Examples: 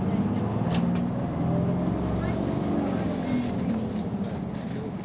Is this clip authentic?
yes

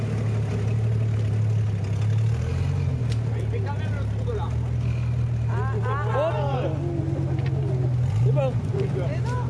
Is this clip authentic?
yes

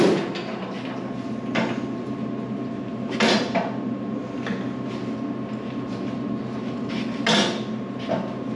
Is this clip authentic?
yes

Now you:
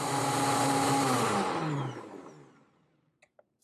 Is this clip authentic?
yes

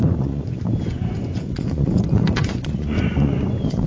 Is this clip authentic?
no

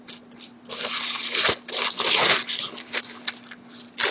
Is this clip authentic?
yes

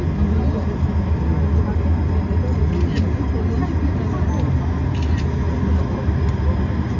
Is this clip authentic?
yes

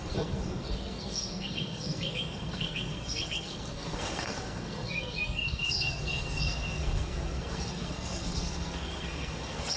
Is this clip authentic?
no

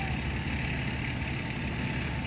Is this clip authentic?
yes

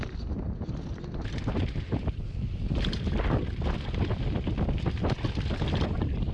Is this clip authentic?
yes